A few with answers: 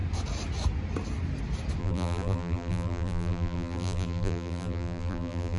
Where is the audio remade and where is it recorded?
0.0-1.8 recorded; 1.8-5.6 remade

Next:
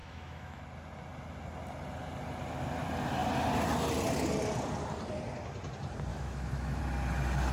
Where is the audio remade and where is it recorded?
0.0-0.6 remade; 0.6-6.1 recorded; 6.1-6.8 remade; 6.8-7.5 recorded

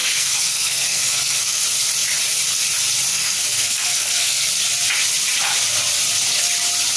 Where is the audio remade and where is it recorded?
0.0-1.6 remade; 1.6-3.1 recorded; 3.1-4.5 remade; 4.5-7.0 recorded

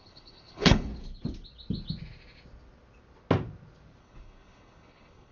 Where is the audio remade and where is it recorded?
0.0-0.9 remade; 0.9-4.0 recorded; 4.0-5.3 remade

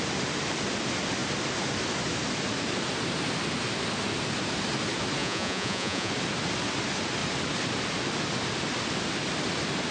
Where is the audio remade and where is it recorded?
0.0-5.2 recorded; 5.2-6.1 remade; 6.1-9.9 recorded

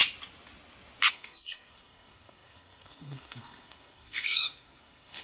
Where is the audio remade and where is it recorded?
0.0-1.1 recorded; 1.1-5.2 remade